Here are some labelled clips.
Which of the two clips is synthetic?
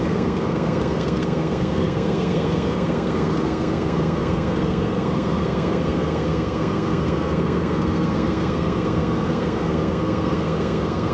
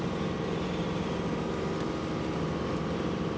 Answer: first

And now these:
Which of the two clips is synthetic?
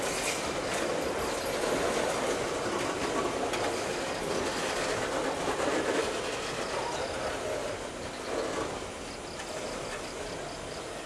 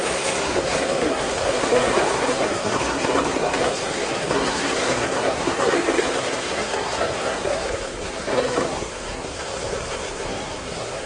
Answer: second